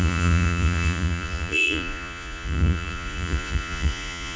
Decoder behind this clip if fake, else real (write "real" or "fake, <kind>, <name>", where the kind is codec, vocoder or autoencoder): fake, vocoder, Vocos